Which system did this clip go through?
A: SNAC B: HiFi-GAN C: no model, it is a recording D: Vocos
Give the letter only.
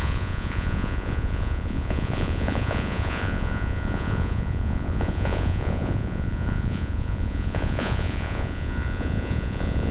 D